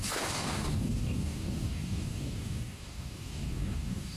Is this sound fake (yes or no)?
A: yes